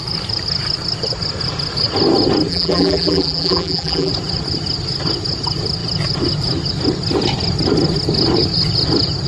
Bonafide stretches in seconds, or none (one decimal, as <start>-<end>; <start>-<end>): 0.0-2.5; 4.1-9.3